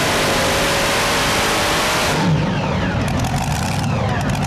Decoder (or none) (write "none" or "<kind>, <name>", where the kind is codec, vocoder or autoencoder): none